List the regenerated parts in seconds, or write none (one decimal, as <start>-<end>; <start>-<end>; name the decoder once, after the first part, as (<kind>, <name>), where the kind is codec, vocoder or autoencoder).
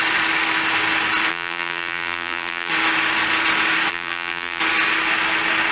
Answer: 1.3-2.7 (vocoder, BigVGAN v2); 3.9-4.6